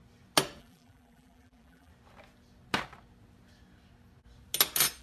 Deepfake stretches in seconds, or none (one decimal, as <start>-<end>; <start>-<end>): 0.6-1.9